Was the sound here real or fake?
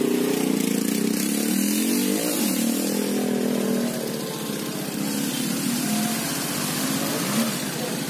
real